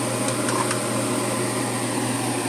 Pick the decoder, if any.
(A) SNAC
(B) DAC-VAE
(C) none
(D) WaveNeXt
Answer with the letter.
C